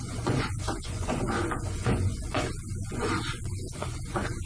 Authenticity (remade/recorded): remade